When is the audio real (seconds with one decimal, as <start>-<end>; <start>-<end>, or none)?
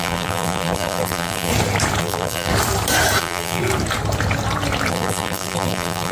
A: 1.5-2.0; 2.5-3.2; 3.6-4.9